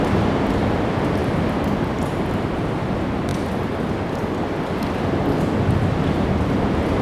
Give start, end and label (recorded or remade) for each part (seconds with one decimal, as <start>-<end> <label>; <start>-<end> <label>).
0.0-7.0 recorded